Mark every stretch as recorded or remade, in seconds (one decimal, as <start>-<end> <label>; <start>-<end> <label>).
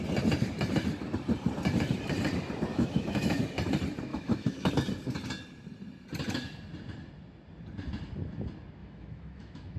0.0-2.7 recorded; 2.7-3.4 remade; 3.4-4.1 recorded; 4.1-4.7 remade; 4.7-8.8 recorded; 8.8-9.8 remade